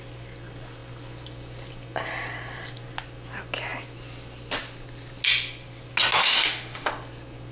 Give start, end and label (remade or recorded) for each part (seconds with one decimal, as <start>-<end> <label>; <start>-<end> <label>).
0.0-6.2 recorded; 6.2-6.9 remade; 6.9-7.5 recorded